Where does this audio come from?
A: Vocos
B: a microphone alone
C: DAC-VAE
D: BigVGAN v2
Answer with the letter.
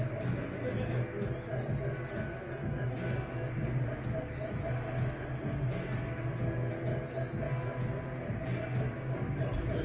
B